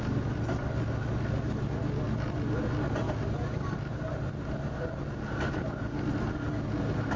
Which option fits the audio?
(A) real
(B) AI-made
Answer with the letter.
A